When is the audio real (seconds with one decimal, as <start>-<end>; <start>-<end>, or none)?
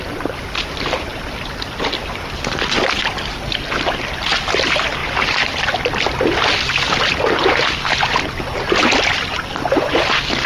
0.0-5.0; 5.6-10.5